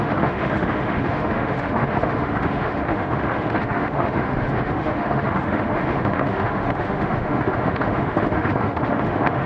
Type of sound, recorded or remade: remade